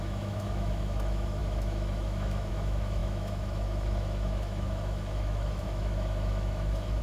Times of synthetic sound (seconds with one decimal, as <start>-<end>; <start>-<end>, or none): 0.0-7.0